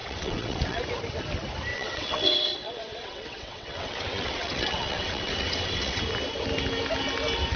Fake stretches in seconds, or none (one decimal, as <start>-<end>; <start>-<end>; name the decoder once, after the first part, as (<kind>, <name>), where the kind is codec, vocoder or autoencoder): 0.0-0.8 (vocoder, WaveNeXt); 1.7-6.0